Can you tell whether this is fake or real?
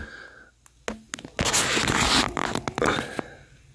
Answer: real